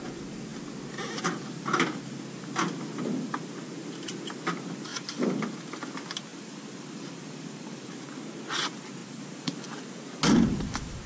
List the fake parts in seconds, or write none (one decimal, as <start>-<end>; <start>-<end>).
4.9-5.5; 6.3-7.9; 9.0-9.9